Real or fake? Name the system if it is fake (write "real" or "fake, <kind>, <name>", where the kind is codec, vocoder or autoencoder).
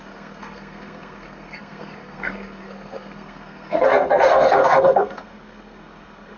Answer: fake, codec, SNAC